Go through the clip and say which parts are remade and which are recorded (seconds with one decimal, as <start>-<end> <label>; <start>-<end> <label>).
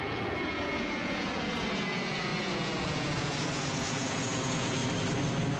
0.0-4.8 remade; 4.8-5.6 recorded